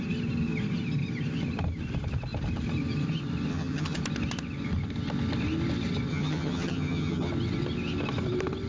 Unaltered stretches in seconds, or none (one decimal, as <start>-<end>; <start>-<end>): 0.0-3.5; 4.0-6.1; 7.3-8.7